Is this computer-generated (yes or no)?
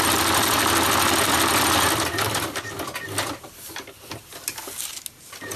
no